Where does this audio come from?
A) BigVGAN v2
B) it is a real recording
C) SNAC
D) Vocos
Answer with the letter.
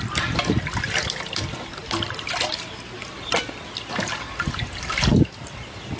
B